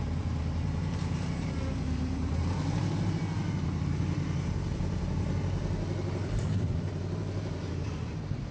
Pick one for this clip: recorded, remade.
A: remade